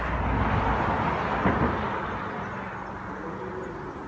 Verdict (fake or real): real